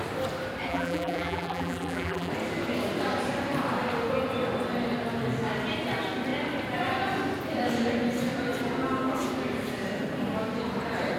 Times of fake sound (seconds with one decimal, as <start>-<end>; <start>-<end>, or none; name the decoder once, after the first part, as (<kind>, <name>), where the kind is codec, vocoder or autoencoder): 0.7-2.3 (vocoder, BigVGAN v2)